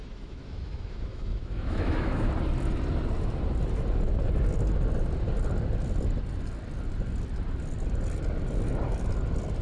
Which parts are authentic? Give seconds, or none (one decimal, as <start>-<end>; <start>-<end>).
2.3-9.6